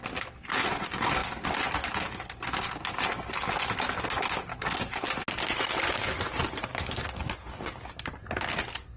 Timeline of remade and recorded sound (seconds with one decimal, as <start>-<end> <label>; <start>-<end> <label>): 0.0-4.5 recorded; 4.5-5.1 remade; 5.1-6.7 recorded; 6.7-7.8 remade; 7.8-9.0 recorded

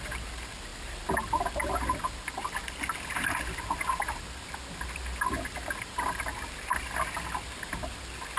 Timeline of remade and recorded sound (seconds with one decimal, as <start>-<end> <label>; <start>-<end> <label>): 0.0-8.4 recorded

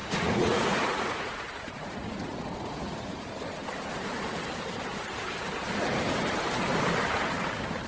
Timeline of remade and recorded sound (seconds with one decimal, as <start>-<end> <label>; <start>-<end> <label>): 0.0-3.7 remade; 3.7-7.9 recorded

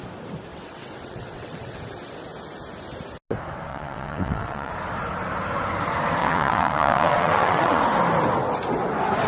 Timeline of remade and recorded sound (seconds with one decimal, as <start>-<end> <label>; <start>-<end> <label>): 0.0-0.5 recorded; 0.5-1.8 remade; 1.8-3.7 recorded; 3.7-4.7 remade; 4.7-6.2 recorded; 6.2-7.8 remade; 7.8-9.3 recorded

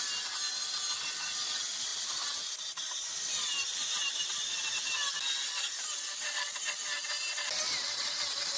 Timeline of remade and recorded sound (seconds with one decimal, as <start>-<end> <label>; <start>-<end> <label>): 0.0-8.6 recorded

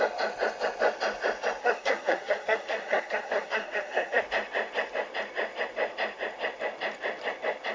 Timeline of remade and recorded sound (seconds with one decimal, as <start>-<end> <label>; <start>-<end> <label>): 0.0-1.6 recorded; 1.6-4.2 remade; 4.2-7.7 recorded